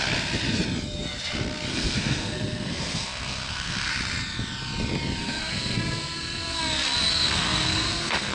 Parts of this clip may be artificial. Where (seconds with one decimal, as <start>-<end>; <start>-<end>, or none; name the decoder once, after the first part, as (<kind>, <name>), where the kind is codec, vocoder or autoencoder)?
1.7-3.9 (codec, SNAC); 5.2-6.6; 7.1-8.3